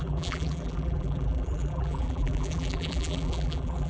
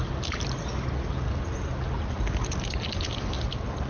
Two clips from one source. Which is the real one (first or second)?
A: second